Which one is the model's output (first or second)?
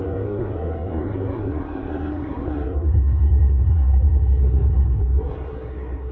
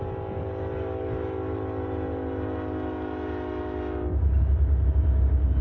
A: first